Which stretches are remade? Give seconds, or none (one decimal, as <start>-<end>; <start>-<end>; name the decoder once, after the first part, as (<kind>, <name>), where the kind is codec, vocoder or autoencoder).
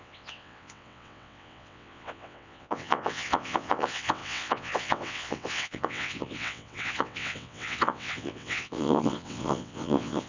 0.0-10.3 (vocoder, WaveNeXt)